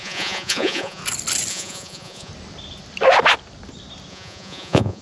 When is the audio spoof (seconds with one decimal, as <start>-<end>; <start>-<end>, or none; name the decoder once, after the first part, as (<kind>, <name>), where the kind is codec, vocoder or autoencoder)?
0.0-1.0 (vocoder, Vocos); 1.5-2.3; 4.1-5.0